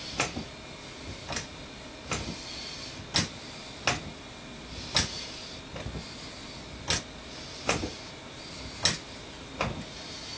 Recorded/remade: recorded